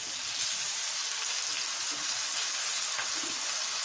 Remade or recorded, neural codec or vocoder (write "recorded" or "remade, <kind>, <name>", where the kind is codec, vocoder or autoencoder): recorded